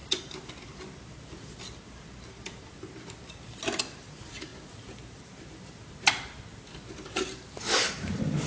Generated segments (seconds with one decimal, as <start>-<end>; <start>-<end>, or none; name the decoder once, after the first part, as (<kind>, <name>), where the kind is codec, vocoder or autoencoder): 0.0-0.8 (vocoder, BigVGAN v2)